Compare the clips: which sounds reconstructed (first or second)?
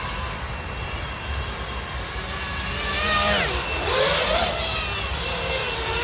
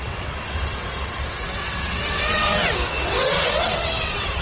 second